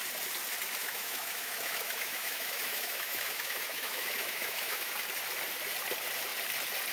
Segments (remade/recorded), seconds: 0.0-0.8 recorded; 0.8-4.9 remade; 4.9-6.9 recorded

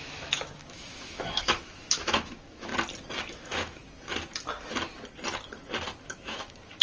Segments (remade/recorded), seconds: 0.0-2.7 remade; 2.7-3.2 recorded; 3.2-3.8 remade; 3.8-6.0 recorded; 6.0-6.8 remade

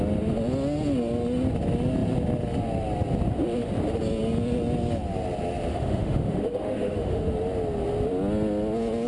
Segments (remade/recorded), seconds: 0.0-5.7 recorded; 5.7-7.3 remade; 7.3-9.1 recorded

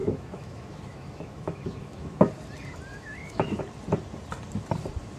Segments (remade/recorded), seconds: 0.0-2.3 remade; 2.3-2.9 recorded; 2.9-3.6 remade; 3.6-5.2 recorded